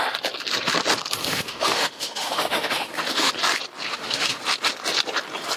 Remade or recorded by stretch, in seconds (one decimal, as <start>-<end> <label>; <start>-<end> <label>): 0.0-1.2 recorded; 1.2-3.3 remade; 3.3-3.9 recorded; 3.9-4.4 remade; 4.4-5.6 recorded

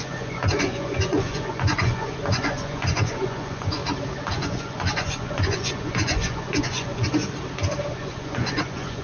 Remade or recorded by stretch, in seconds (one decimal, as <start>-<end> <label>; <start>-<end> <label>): 0.0-3.8 remade; 3.8-4.3 recorded; 4.3-7.2 remade; 7.2-7.9 recorded; 7.9-9.0 remade

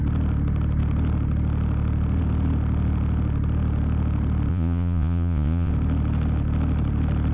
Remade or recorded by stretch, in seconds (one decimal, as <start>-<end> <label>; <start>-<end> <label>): 0.0-4.5 recorded; 4.5-5.7 remade; 5.7-7.3 recorded

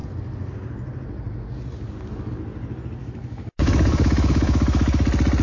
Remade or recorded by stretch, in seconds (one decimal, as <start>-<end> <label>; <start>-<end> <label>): 0.0-3.0 recorded; 3.0-5.0 remade; 5.0-5.4 recorded